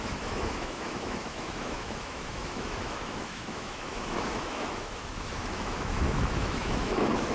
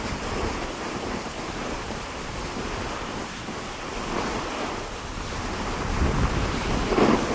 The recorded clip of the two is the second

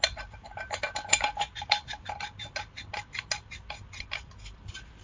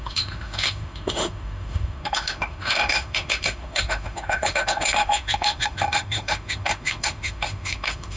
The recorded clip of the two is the first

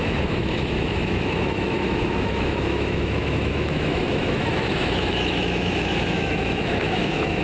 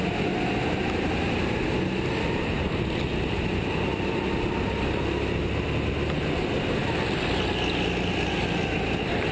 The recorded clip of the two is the second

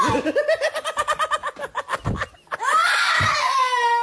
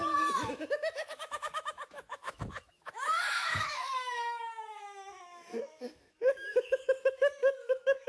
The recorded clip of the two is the first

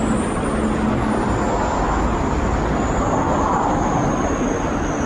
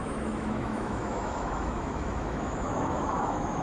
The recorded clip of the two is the first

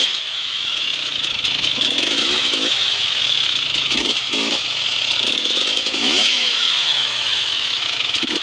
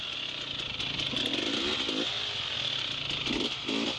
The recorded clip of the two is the second